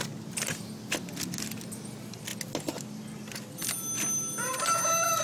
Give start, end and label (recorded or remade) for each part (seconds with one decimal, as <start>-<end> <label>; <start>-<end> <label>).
0.0-5.2 recorded